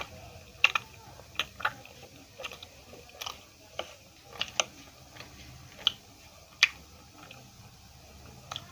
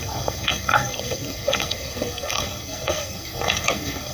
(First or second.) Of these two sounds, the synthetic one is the second